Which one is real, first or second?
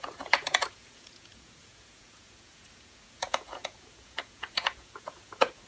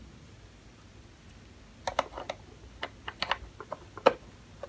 second